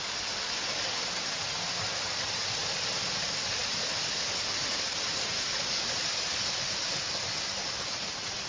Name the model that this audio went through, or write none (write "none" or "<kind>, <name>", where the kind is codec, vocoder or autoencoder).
none